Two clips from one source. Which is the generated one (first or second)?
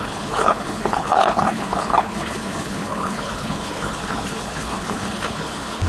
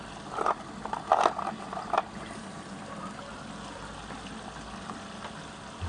first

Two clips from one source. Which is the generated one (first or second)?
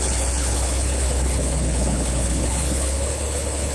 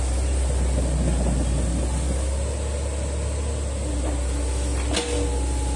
first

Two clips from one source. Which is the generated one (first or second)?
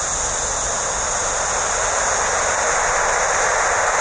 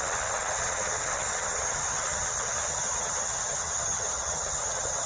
second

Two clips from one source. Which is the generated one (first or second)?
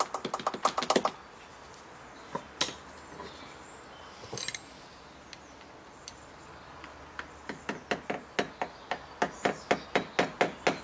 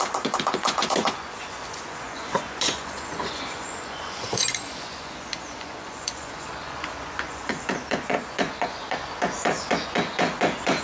second